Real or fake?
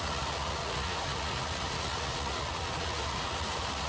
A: fake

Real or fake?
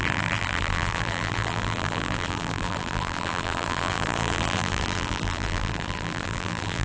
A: fake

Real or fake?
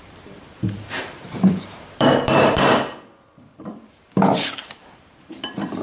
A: fake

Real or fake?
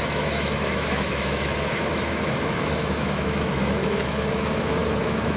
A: fake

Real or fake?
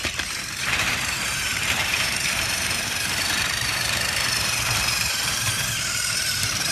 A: fake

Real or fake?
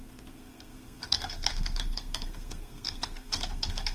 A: fake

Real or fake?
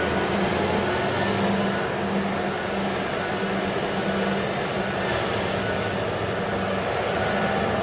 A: real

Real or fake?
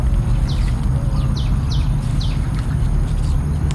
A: real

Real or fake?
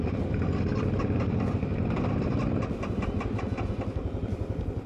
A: real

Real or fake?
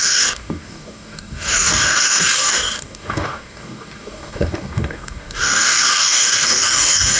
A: fake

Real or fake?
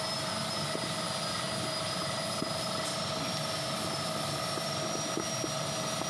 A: real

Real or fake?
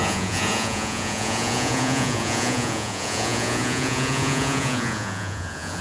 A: fake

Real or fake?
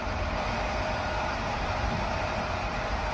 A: fake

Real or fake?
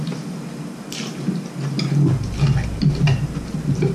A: real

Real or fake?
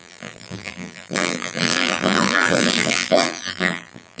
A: fake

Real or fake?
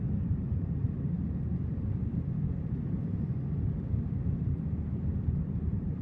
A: fake